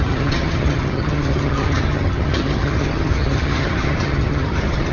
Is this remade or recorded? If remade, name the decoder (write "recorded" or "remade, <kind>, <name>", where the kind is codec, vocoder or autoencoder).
remade, vocoder, HiFi-GAN